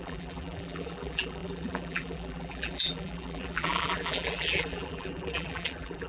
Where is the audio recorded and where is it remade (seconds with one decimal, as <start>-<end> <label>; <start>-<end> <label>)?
0.0-6.1 remade